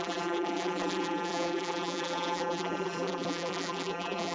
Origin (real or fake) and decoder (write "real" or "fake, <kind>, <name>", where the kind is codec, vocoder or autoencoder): fake, vocoder, BigVGAN v2